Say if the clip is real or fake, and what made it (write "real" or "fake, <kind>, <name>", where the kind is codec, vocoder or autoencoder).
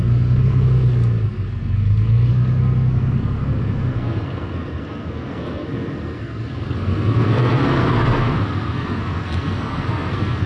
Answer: fake, codec, SNAC